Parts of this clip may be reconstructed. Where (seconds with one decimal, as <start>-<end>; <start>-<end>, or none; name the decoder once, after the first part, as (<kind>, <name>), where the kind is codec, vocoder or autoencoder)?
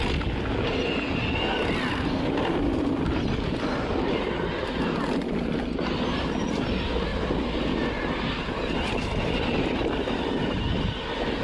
none